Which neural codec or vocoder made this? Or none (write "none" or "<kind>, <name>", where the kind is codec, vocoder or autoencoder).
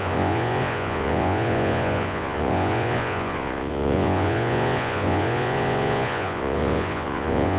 vocoder, Vocos